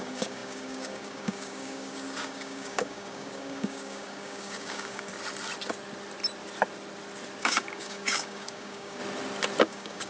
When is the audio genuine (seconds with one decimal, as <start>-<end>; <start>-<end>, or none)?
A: 5.1-7.4; 9.0-9.6